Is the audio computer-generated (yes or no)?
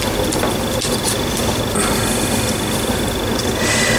no